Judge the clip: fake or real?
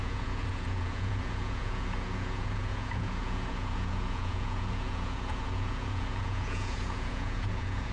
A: fake